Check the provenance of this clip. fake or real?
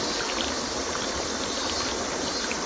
real